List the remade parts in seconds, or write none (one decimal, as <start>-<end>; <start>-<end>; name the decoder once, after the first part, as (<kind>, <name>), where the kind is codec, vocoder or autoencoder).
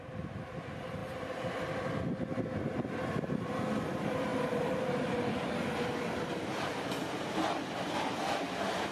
7.0-8.2 (vocoder, BigVGAN v2)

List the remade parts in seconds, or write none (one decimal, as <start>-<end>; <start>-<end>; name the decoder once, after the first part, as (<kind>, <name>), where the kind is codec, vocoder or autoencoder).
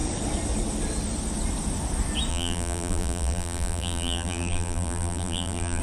2.3-5.8 (vocoder, BigVGAN v2)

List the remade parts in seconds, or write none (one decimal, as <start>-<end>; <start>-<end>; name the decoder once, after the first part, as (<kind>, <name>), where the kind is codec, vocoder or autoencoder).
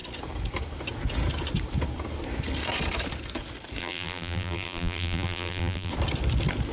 3.8-5.9 (vocoder, BigVGAN v2)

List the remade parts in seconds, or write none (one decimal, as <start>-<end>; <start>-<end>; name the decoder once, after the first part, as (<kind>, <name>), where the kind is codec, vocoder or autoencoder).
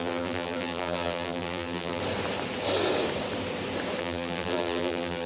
0.0-2.0 (vocoder, BigVGAN v2); 4.0-5.3